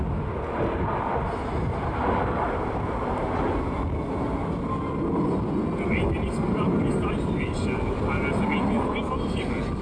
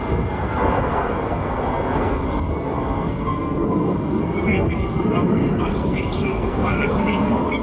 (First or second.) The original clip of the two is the first